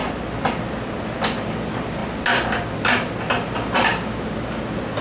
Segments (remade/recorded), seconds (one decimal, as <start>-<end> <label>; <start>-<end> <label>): 0.0-5.0 recorded